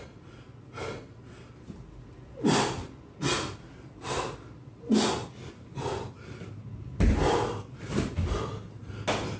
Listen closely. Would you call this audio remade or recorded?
recorded